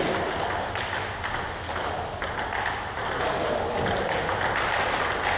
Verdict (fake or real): real